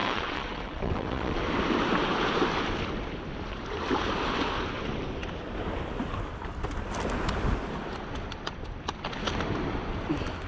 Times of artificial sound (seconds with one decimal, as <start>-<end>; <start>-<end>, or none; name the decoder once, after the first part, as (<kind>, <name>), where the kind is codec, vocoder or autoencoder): 0.0-1.4 (vocoder, WaveNeXt)